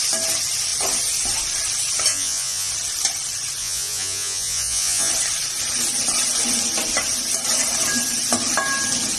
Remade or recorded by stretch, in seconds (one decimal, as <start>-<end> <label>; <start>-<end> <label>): 0.0-2.1 recorded; 2.1-2.7 remade; 2.7-3.6 recorded; 3.6-5.1 remade; 5.1-9.2 recorded